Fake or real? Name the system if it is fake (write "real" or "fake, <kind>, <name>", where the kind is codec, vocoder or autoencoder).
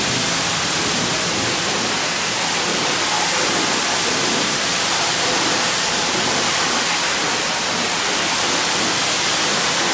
real